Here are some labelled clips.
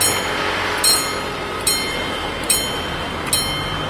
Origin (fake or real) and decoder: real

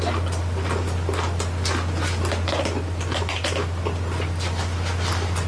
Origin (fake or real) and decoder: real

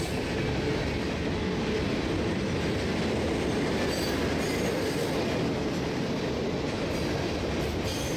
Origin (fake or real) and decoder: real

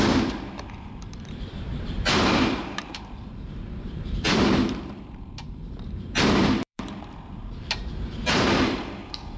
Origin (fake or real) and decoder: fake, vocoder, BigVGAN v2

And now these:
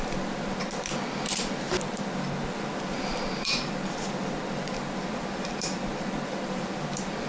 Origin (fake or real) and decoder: fake, vocoder, BigVGAN v2